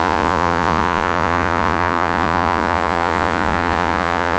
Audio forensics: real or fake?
fake